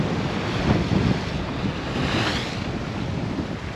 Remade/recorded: recorded